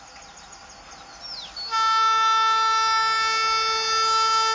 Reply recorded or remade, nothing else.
recorded